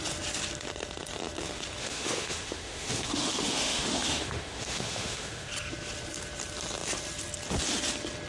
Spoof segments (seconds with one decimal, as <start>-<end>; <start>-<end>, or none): 1.8-5.5